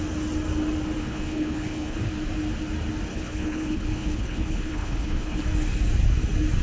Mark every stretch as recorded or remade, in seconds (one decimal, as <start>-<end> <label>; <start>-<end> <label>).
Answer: 0.0-1.0 recorded; 1.0-2.0 remade; 2.0-3.1 recorded; 3.1-5.4 remade; 5.4-6.6 recorded